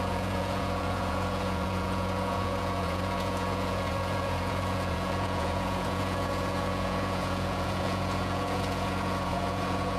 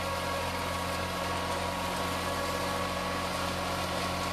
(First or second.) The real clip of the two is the second